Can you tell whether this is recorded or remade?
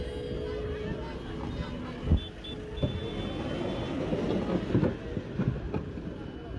recorded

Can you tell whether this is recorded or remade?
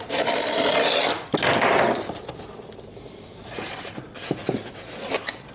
recorded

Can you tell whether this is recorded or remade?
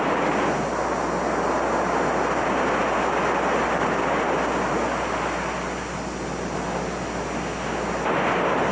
recorded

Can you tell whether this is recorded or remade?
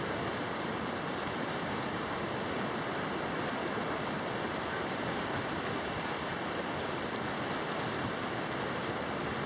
remade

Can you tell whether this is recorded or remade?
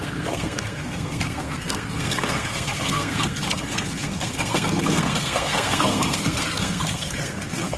remade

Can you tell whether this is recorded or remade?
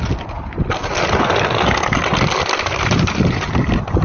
recorded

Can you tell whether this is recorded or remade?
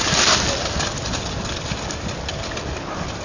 recorded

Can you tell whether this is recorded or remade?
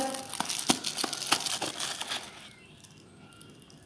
recorded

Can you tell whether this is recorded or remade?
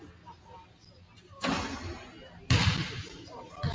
recorded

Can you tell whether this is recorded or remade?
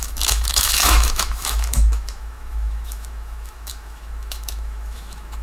remade